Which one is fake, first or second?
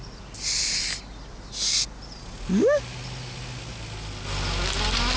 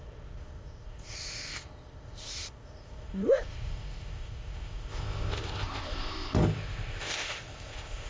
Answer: second